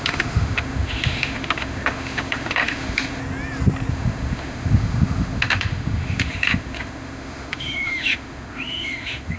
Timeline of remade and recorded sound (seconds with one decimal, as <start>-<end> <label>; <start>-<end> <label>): 0.0-3.2 remade; 3.2-3.9 recorded; 3.9-9.4 remade